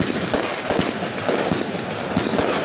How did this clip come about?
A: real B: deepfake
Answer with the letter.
A